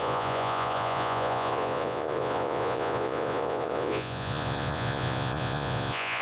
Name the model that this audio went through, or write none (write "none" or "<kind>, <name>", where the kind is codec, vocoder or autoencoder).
vocoder, Vocos